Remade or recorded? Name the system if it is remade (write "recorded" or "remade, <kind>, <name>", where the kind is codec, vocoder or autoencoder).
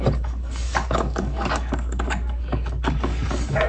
remade, codec, DAC